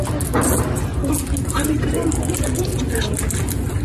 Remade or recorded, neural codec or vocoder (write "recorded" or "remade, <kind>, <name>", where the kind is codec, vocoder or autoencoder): recorded